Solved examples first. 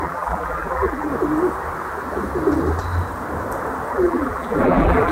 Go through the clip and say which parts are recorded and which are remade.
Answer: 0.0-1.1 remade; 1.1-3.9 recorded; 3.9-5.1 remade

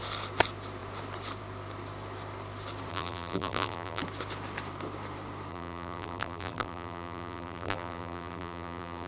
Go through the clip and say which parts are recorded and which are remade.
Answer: 0.0-2.9 recorded; 2.9-4.0 remade; 4.0-5.5 recorded; 5.5-9.1 remade

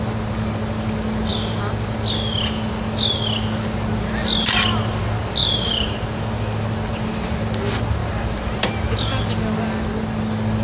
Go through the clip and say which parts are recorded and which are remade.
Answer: 0.0-5.4 recorded; 5.4-6.0 remade; 6.0-8.0 recorded; 8.0-8.7 remade; 8.7-10.6 recorded

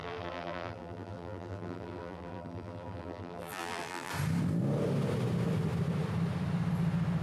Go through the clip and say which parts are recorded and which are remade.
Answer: 0.0-4.1 remade; 4.1-7.2 recorded

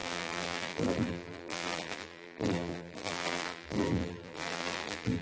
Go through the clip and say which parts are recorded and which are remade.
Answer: 0.0-5.2 remade